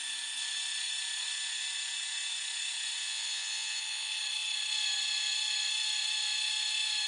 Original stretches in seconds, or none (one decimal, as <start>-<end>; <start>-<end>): 0.0-3.0; 4.1-7.1

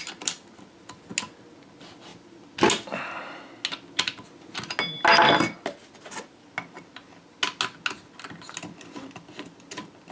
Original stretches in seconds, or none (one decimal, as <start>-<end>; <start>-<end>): 0.0-10.1

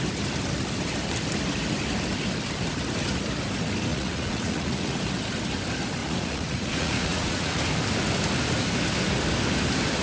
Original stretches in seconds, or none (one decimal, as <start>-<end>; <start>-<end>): 0.0-3.9; 5.0-6.0; 7.6-10.0

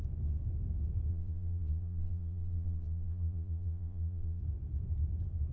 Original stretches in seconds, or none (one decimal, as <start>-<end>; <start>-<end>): 0.0-1.1; 4.4-5.5